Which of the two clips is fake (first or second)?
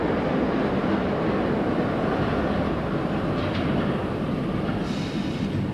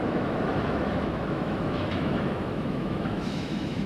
second